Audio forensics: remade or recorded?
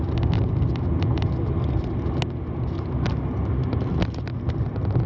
recorded